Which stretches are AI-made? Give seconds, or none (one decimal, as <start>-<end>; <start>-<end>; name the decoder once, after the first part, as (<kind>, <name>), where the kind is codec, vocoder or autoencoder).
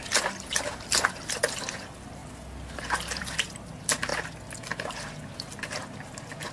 0.0-2.2 (vocoder, BigVGAN v2); 2.8-4.1; 5.1-6.5